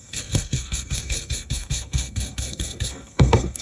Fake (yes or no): yes